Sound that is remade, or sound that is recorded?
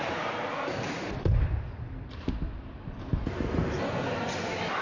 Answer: recorded